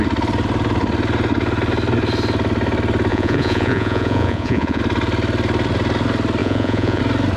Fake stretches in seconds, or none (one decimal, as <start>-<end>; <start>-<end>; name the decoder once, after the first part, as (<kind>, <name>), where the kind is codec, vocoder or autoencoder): 3.1-4.8 (vocoder, Vocos); 6.4-7.0